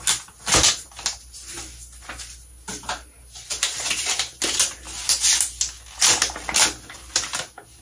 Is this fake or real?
real